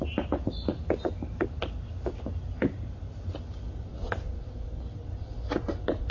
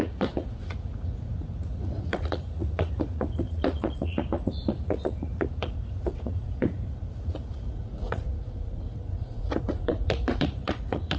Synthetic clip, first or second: second